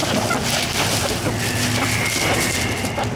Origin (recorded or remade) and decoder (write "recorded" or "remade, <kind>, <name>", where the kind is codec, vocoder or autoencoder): recorded